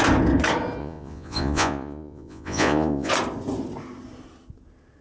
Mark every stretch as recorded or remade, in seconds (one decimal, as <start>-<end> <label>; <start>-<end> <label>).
0.0-0.8 recorded; 0.8-3.1 remade; 3.1-5.0 recorded

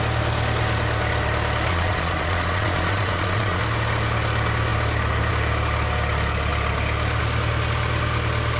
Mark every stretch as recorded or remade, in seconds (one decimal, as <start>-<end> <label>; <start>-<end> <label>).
0.0-1.7 recorded; 1.7-3.6 remade; 3.6-8.6 recorded